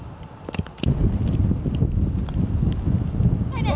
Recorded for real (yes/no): yes